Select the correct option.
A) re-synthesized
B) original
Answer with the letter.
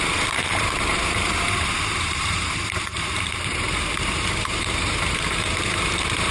A